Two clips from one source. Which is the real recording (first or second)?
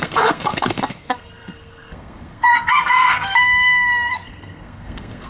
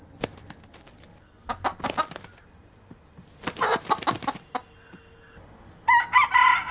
second